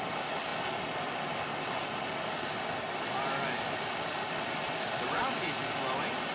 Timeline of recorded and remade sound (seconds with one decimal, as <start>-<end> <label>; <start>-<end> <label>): 0.0-6.3 recorded